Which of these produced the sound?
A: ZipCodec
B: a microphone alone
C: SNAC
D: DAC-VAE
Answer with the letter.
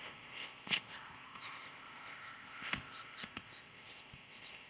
A